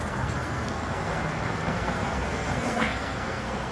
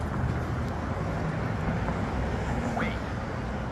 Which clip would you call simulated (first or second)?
first